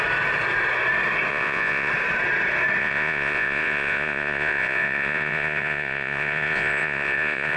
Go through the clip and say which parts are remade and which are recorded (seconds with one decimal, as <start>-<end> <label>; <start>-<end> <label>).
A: 0.0-1.3 recorded; 1.3-1.9 remade; 1.9-2.8 recorded; 2.8-7.6 remade